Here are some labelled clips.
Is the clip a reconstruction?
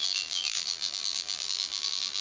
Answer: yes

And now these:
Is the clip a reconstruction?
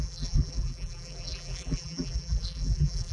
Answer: yes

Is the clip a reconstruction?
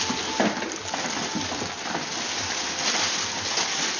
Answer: no